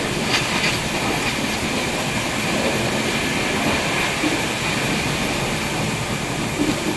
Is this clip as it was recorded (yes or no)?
yes